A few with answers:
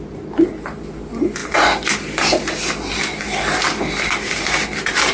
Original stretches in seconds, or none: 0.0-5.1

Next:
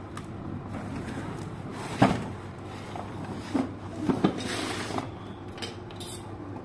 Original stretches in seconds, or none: 0.0-6.6

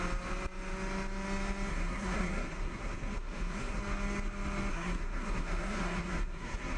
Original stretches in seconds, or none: 0.0-1.7; 3.8-4.7